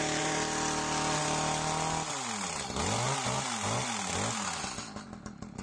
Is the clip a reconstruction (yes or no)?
no